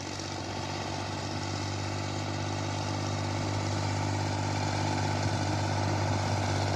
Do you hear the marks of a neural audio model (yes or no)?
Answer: no